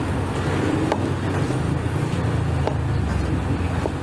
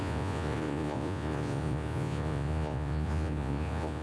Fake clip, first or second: second